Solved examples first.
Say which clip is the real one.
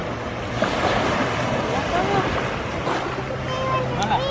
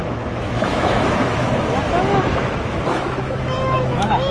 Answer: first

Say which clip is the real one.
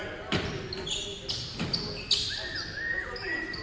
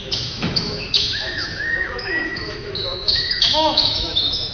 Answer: first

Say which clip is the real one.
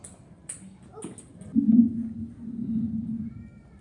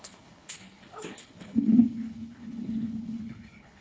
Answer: first